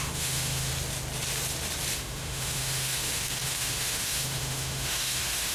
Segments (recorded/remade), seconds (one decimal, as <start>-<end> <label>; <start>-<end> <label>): 0.0-0.7 remade; 0.7-1.9 recorded; 1.9-5.5 remade